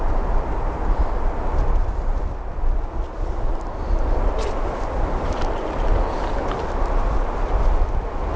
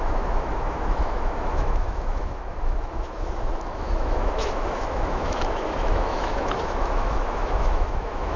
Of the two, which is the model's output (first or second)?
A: second